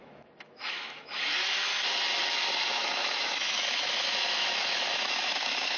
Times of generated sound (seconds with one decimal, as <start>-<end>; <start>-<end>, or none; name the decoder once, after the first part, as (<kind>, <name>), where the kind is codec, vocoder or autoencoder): 0.0-1.7 (autoencoder, DAC-VAE); 2.7-5.8